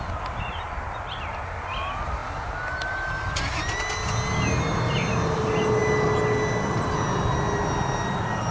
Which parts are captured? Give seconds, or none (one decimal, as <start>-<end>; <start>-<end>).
0.0-8.5